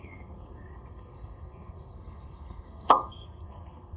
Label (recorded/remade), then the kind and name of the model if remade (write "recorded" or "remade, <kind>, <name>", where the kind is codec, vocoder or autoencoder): remade, codec, SNAC